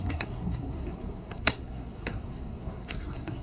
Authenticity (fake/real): fake